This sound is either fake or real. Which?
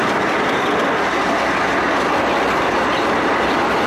real